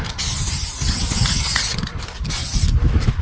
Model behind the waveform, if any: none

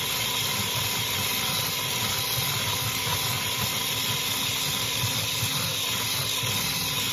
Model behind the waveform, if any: none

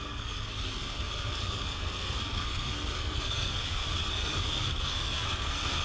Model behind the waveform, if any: codec, SNAC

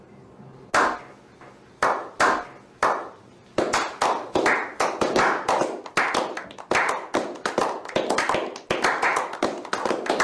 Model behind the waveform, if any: none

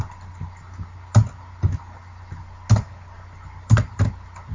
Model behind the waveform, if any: none